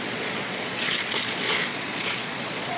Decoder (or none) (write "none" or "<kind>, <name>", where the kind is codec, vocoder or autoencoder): vocoder, Vocos